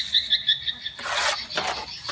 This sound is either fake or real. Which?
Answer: real